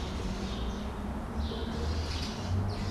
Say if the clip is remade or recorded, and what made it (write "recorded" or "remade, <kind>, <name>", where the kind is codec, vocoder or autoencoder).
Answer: recorded